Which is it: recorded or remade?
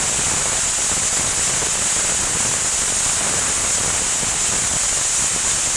recorded